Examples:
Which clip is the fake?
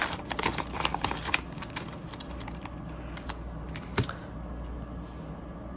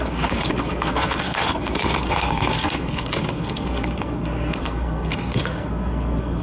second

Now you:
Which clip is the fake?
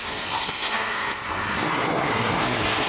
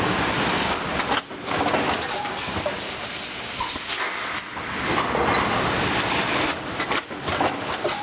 first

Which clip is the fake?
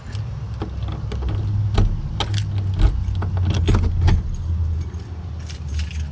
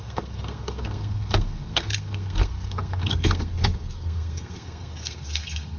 second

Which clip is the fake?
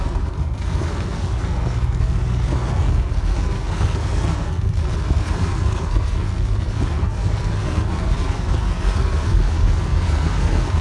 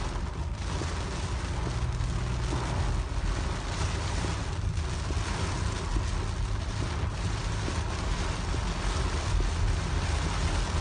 first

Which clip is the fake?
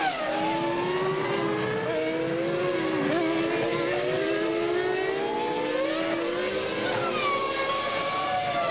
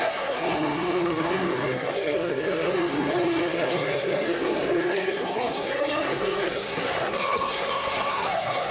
second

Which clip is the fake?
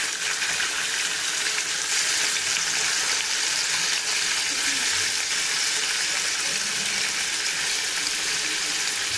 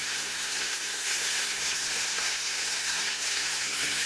second